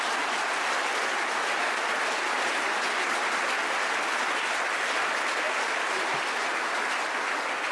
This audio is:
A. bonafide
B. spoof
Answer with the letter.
A